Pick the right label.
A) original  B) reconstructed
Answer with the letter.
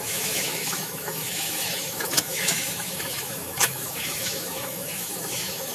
B